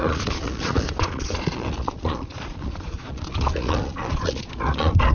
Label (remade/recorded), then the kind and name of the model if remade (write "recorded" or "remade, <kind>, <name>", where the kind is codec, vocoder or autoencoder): remade, vocoder, Vocos